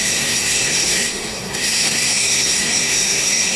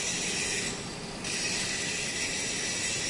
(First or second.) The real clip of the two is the second